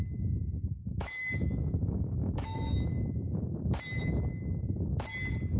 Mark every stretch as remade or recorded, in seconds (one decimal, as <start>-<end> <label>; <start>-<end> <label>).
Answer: 0.0-3.4 remade; 3.4-5.6 recorded